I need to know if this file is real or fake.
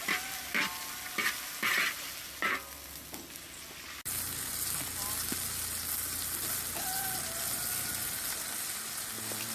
real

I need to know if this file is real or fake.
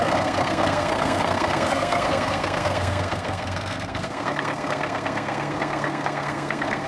fake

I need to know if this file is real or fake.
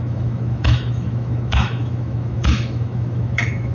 fake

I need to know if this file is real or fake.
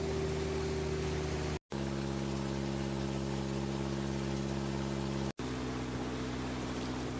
real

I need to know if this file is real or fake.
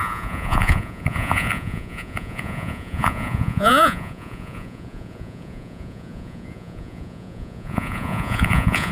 fake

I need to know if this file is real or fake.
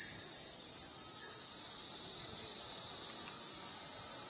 real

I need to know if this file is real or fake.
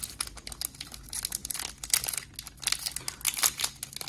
real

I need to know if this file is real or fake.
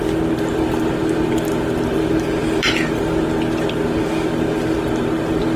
real